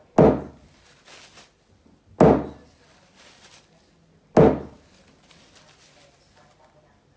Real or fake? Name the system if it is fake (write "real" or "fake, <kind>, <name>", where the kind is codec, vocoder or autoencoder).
real